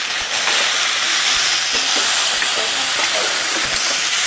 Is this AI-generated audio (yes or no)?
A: yes